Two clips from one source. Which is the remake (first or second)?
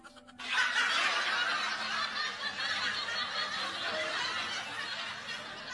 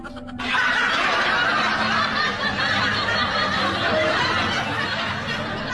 second